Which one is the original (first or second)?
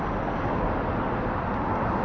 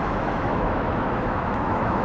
first